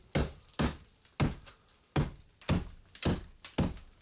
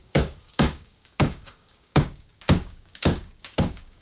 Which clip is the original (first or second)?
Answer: first